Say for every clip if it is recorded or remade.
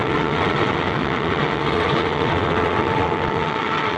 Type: remade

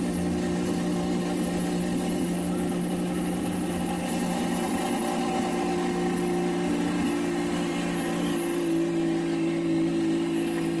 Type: recorded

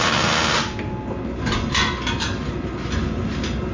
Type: recorded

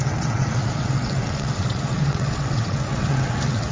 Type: remade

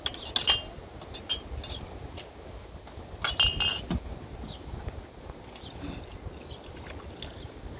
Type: recorded